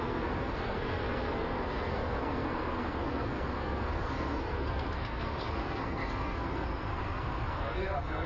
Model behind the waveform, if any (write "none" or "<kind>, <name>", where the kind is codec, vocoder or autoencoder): codec, SNAC